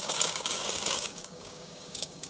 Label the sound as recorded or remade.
remade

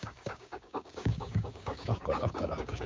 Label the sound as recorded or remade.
remade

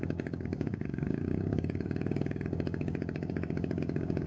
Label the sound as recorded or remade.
remade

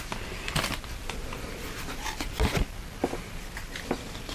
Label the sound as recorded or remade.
recorded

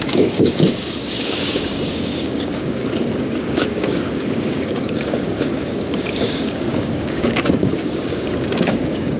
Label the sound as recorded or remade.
remade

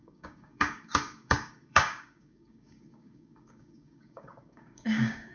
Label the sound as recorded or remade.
remade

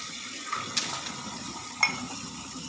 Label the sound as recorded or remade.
recorded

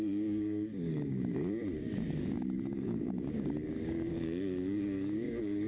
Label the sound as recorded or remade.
remade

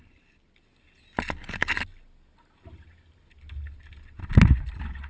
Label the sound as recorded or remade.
recorded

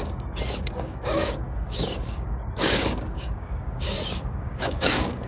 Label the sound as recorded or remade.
remade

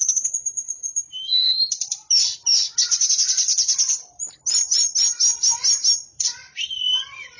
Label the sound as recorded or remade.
recorded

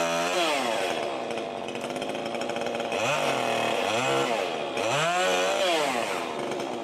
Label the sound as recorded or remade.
recorded